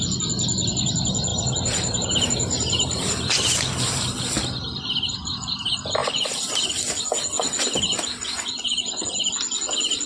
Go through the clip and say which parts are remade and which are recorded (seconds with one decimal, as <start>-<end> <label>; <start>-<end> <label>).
0.0-1.3 recorded; 1.3-4.2 remade; 4.2-6.0 recorded; 6.0-6.7 remade; 6.7-10.1 recorded